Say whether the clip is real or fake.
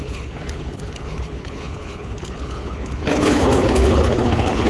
fake